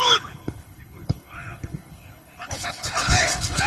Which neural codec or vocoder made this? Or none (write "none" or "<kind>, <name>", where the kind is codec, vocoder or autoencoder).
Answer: codec, HILCodec